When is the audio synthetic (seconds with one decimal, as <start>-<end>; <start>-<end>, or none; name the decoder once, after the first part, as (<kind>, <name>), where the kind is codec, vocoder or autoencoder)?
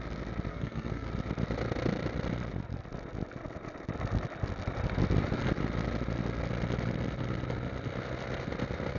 0.5-1.1 (codec, SNAC)